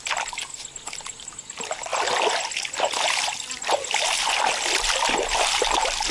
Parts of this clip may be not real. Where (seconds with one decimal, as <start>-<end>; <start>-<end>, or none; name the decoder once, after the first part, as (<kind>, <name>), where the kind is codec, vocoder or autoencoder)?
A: none